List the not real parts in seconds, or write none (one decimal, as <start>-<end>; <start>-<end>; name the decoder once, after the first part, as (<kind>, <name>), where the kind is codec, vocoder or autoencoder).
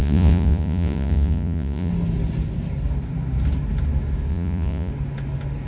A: 0.0-1.9 (vocoder, Vocos); 4.3-4.9